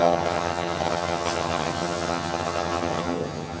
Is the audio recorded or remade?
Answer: remade